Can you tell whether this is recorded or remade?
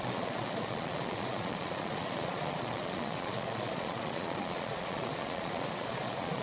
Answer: remade